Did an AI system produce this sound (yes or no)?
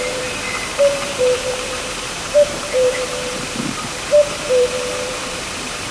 yes